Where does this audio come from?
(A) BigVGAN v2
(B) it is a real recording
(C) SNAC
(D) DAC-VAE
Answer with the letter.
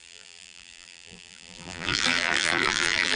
A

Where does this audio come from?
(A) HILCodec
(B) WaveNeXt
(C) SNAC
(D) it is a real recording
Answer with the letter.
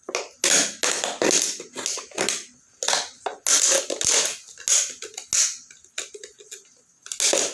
D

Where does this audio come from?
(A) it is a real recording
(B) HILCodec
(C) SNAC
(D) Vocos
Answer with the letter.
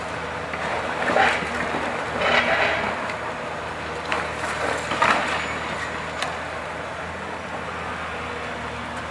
A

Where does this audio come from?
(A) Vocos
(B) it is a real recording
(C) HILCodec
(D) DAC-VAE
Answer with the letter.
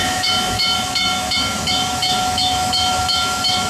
D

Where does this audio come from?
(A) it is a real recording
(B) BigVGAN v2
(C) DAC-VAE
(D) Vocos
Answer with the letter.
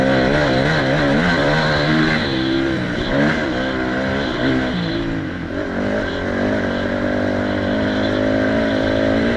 A